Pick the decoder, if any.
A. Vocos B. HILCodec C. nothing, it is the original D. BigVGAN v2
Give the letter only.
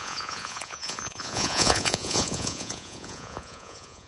A